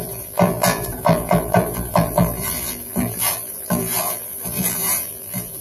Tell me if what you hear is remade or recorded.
remade